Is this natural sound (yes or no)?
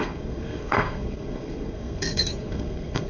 no